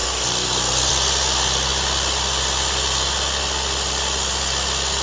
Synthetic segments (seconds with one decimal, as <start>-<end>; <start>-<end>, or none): none